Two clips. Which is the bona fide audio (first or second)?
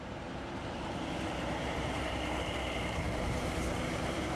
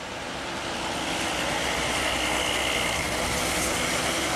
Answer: second